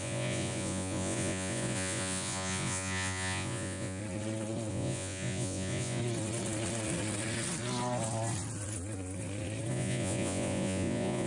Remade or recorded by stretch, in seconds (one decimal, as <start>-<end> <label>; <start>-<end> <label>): 0.0-4.0 remade; 4.0-4.7 recorded; 4.7-6.0 remade; 6.0-9.7 recorded; 9.7-11.3 remade